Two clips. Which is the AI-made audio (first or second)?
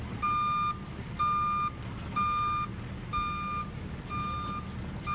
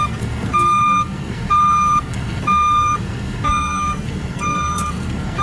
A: second